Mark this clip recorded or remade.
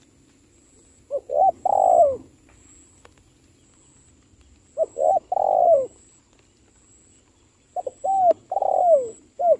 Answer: recorded